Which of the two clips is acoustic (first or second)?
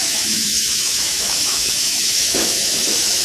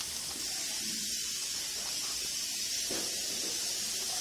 second